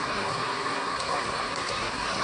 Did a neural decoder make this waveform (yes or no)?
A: yes